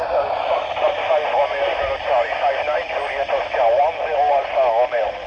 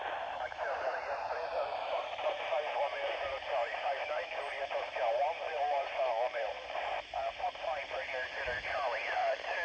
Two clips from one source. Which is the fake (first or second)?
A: second